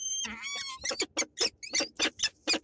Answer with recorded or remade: recorded